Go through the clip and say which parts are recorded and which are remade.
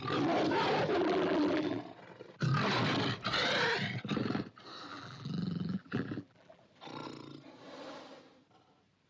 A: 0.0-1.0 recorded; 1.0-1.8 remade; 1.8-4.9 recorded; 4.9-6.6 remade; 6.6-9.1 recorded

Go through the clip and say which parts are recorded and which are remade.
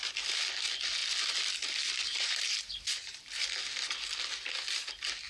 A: 0.0-2.1 recorded; 2.1-3.4 remade; 3.4-5.3 recorded